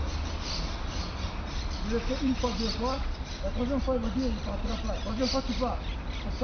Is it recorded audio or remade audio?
recorded